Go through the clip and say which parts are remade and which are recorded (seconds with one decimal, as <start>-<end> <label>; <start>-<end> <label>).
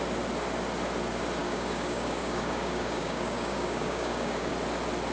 0.0-1.4 recorded; 1.4-4.5 remade; 4.5-5.1 recorded